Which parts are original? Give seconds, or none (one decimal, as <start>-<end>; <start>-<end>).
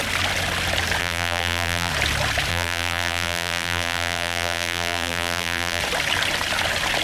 0.0-1.0; 1.9-2.5; 5.8-7.0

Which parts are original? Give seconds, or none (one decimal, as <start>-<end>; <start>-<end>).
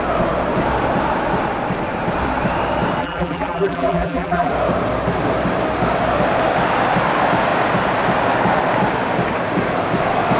0.0-3.0; 4.5-10.4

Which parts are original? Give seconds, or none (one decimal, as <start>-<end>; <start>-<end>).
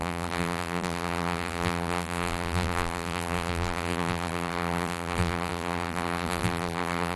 none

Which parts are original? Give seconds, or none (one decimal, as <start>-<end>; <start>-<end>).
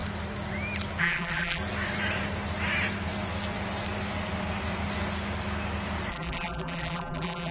0.0-1.0; 1.6-6.1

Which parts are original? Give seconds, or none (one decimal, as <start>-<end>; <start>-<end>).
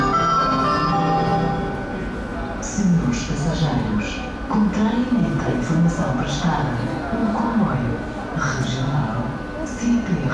0.0-7.2; 8.3-10.3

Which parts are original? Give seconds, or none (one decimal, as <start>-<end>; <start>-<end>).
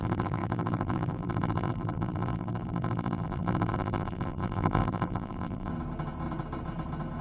5.7-7.2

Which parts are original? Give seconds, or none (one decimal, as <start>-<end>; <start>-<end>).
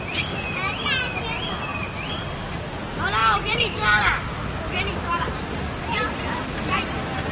0.0-3.2; 6.2-7.3